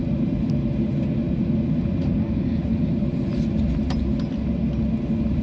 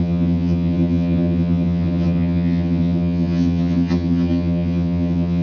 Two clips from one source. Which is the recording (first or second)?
first